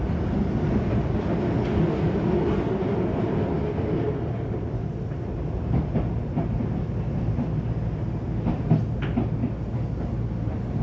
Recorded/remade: recorded